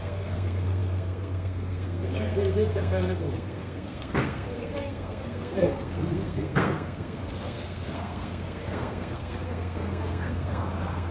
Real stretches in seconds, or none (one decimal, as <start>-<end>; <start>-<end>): none